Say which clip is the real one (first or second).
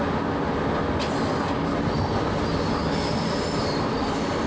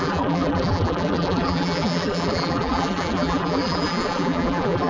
first